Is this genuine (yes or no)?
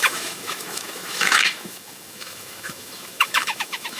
no